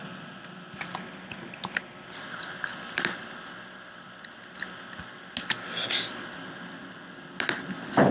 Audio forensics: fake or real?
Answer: real